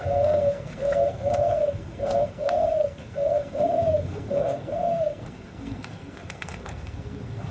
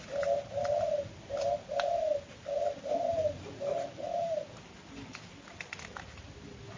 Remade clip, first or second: first